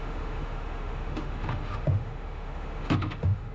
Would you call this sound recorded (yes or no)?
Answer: no